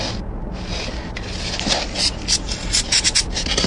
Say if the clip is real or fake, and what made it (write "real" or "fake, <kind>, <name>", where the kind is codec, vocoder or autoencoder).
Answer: real